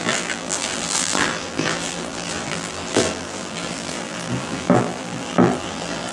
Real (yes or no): no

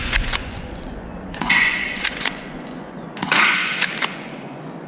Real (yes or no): no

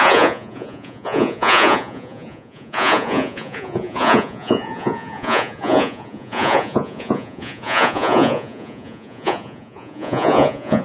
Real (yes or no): no